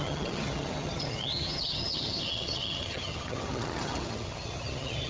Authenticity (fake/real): fake